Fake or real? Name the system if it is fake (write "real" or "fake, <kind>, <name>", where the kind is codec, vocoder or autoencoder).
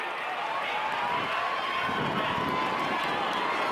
real